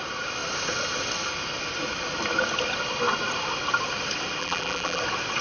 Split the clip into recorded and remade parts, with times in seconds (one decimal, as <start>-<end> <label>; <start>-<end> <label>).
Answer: 0.0-4.4 recorded; 4.4-5.0 remade; 5.0-5.4 recorded